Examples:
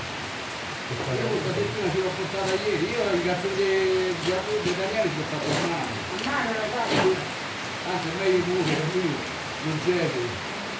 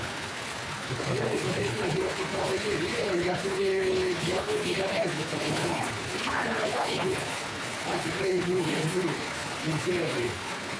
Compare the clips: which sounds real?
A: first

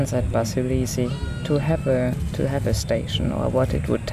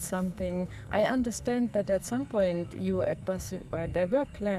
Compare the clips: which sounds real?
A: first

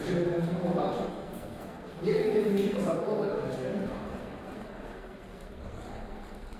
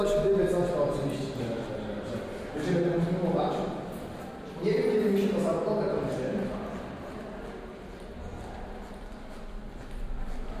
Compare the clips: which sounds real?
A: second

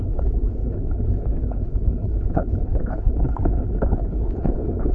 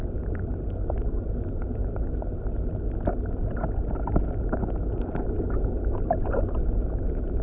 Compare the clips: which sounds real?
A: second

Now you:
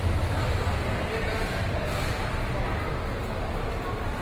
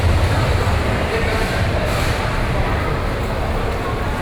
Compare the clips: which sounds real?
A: first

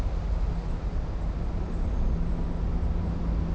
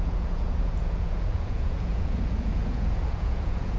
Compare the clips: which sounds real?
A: first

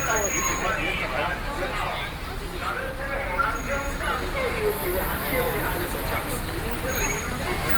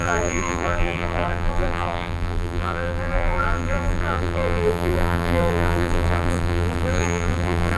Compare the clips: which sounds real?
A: first